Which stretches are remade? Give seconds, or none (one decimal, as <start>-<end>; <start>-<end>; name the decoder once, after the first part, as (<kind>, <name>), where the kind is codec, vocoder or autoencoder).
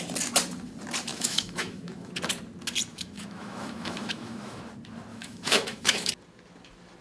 1.1-2.1 (autoencoder, DAC-VAE); 2.9-4.6; 5.1-6.1